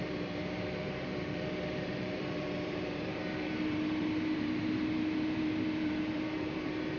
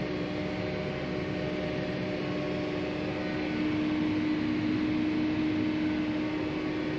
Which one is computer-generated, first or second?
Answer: first